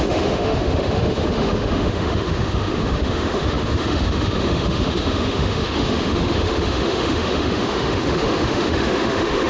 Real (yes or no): no